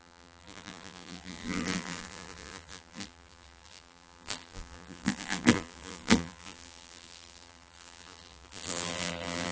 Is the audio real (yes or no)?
no